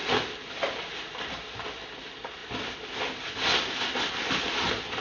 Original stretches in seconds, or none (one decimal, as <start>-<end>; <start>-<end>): 0.0-5.0